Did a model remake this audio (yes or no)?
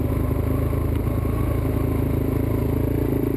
no